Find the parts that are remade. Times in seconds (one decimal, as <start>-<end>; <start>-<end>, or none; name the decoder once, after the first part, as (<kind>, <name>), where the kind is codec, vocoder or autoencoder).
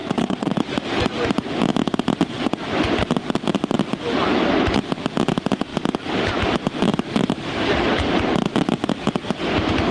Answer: 0.0-0.6 (vocoder, WaveNeXt)